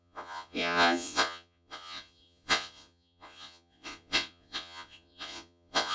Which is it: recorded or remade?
remade